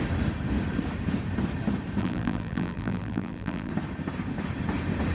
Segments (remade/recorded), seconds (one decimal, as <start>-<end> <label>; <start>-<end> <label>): 0.0-2.0 recorded; 2.0-3.7 remade; 3.7-5.1 recorded